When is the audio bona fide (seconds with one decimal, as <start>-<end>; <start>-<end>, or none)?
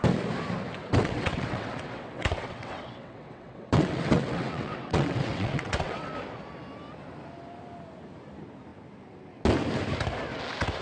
0.0-0.8; 6.1-10.8